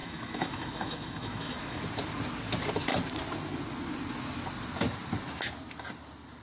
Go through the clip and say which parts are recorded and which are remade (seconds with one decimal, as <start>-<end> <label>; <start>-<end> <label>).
0.0-1.8 remade; 1.8-6.4 recorded